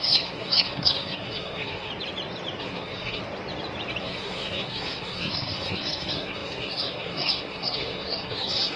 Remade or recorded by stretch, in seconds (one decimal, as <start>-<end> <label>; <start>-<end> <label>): 0.0-1.9 remade; 1.9-2.6 recorded; 2.6-3.2 remade; 3.2-4.0 recorded; 4.0-8.8 remade